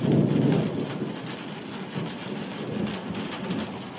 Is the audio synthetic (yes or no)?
no